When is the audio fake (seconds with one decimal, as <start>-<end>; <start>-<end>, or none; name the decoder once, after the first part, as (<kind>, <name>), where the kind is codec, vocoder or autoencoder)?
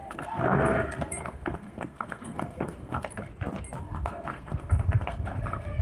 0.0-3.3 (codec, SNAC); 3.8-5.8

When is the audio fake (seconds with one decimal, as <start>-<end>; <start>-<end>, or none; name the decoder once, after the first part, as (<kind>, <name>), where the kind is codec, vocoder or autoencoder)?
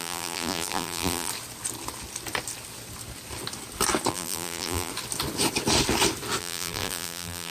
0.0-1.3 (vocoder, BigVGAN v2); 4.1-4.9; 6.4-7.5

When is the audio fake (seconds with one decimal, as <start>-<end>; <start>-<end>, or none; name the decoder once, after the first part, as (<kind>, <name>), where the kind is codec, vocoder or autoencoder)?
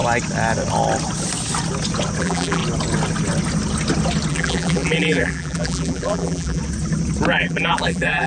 2.2-2.6 (vocoder, BigVGAN v2); 4.3-6.6; 7.3-8.3